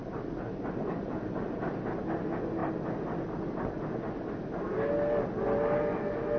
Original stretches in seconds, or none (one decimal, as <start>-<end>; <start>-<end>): 0.0-6.4